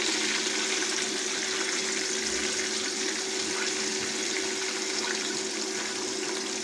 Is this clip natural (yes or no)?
yes